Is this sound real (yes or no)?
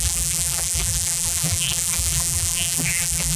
no